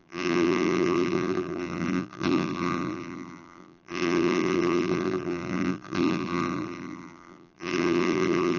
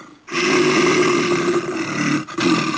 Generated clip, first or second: first